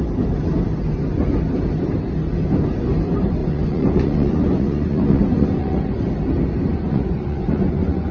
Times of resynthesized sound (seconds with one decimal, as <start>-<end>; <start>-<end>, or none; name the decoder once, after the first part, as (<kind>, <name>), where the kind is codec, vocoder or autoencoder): 3.4-5.8 (vocoder, Vocos); 6.7-8.1

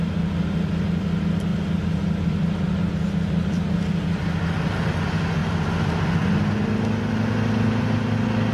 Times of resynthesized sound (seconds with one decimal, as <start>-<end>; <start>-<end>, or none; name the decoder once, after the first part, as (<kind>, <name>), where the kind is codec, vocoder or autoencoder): 1.5-5.0 (vocoder, BigVGAN v2)